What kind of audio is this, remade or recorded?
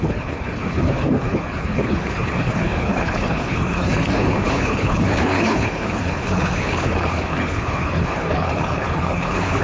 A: remade